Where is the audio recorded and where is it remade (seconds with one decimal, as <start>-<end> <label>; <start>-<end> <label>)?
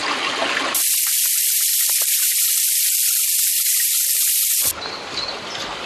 0.0-5.9 recorded